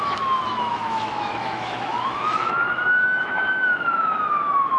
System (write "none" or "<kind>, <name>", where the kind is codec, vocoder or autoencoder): autoencoder, DAC-VAE